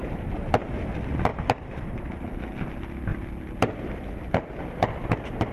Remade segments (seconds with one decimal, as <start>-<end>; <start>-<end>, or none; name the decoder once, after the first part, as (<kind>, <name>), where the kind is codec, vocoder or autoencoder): 1.3-2.2 (vocoder, BigVGAN v2)

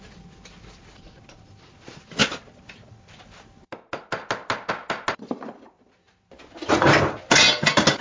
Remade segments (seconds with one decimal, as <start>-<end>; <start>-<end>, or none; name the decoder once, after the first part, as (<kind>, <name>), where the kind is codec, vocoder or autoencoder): none

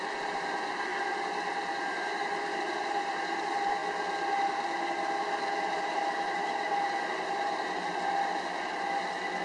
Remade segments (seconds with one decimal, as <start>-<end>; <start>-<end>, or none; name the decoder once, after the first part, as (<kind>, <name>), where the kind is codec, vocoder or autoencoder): 0.0-0.9 (vocoder, BigVGAN v2); 1.8-3.8; 5.4-7.9

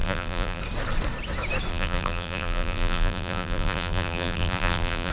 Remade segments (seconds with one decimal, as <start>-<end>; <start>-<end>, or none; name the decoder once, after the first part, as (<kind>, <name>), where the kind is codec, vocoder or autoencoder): 0.0-0.6 (vocoder, BigVGAN v2); 1.7-5.1

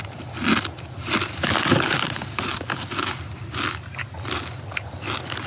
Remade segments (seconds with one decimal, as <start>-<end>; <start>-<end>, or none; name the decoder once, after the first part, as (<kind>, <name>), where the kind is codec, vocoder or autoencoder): 1.4-3.2 (codec, DAC)